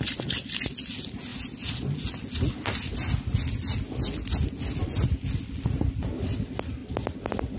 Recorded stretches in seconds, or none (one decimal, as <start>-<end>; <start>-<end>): 0.0-7.6